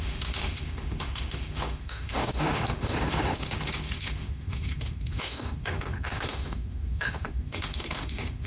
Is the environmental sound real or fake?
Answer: fake